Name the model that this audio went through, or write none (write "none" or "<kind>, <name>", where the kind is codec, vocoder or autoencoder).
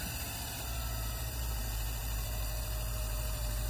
vocoder, BigVGAN v2